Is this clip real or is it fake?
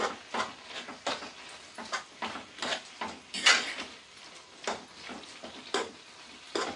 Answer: real